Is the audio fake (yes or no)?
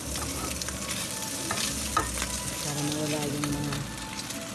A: no